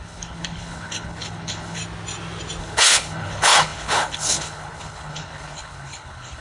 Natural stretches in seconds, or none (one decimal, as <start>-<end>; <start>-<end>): 1.8-2.6